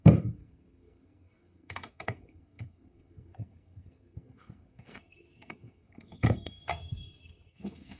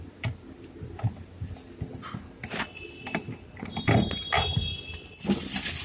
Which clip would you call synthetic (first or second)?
first